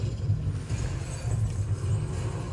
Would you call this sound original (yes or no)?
yes